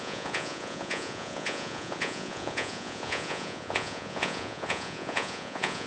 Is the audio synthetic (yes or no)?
yes